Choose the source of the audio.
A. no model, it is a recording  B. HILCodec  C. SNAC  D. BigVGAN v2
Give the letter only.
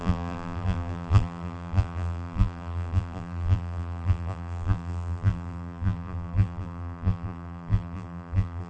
D